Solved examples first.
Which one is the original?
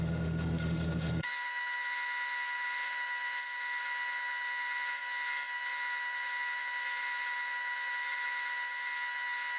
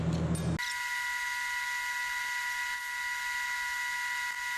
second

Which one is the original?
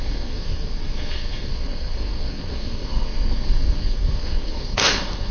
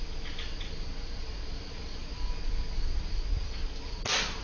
second